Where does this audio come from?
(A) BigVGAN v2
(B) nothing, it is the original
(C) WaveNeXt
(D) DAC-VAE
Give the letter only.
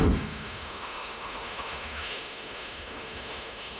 D